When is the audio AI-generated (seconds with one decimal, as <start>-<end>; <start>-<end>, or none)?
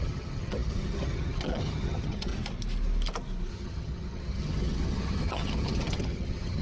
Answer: 0.0-2.3; 3.5-6.6